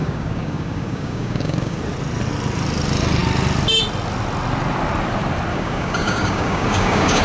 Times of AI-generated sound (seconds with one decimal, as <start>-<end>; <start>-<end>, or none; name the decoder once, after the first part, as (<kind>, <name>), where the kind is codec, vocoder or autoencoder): 0.0-1.8 (codec, DAC); 5.5-7.2